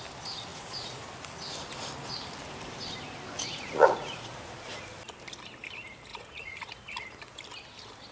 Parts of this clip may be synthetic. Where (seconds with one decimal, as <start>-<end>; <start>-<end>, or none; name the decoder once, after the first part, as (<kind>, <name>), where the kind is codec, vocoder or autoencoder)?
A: 0.5-1.1 (vocoder, Vocos); 3.5-4.3; 6.1-6.7